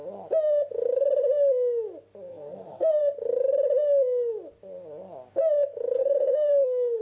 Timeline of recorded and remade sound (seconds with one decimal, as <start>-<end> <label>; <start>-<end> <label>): 0.0-2.3 recorded; 2.3-3.0 remade; 3.0-6.0 recorded; 6.0-7.0 remade